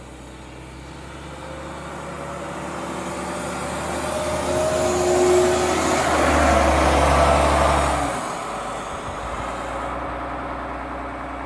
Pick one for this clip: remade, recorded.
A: recorded